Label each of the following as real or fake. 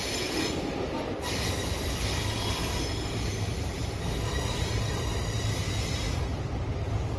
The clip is real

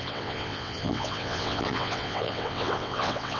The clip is fake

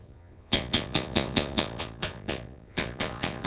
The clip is fake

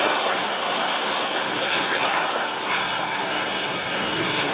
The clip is fake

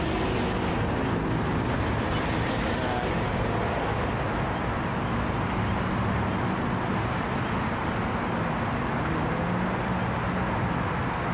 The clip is real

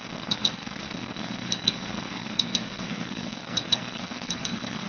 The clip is fake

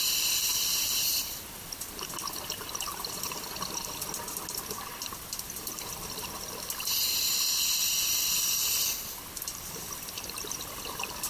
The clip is fake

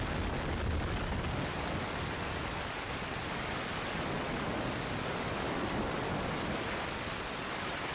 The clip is real